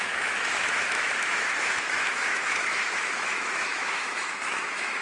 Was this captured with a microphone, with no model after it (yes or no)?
no